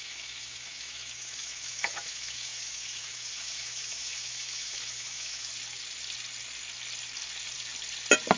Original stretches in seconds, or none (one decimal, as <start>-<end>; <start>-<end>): 5.5-8.4